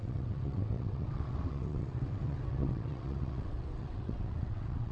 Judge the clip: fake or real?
fake